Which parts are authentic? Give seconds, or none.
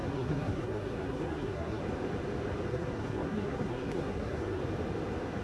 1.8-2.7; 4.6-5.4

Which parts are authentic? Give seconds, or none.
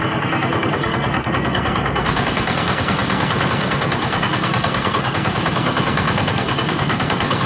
none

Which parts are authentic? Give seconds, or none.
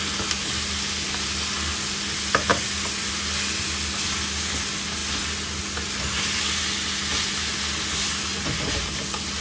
0.0-9.4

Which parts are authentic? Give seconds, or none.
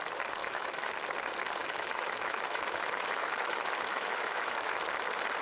0.0-0.4; 0.9-1.6; 4.8-5.4